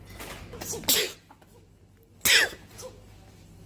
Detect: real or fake real